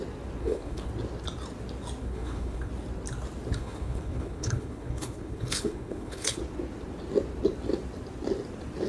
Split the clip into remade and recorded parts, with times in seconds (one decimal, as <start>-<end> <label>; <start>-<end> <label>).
0.0-0.4 recorded; 0.4-0.9 remade; 0.9-2.0 recorded; 2.0-2.7 remade; 2.7-3.5 recorded; 3.5-6.4 remade; 6.4-8.9 recorded